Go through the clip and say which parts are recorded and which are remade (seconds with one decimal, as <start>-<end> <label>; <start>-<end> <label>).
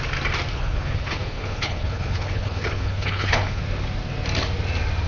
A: 0.0-0.5 recorded; 0.5-3.6 remade; 3.6-5.1 recorded